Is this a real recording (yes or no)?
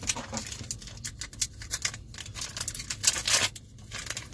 yes